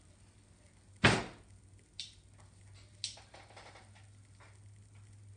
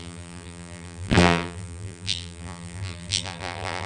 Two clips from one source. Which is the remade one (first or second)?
second